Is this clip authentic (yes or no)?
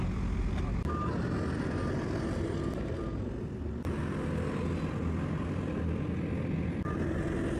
yes